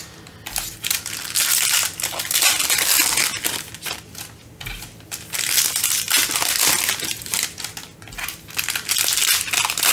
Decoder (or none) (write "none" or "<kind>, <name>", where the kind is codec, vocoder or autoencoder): none